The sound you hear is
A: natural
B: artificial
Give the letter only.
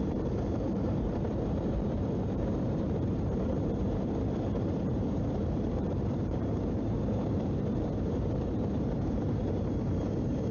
B